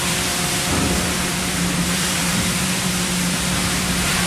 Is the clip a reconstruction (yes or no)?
yes